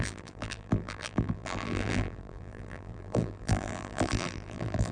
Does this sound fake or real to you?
fake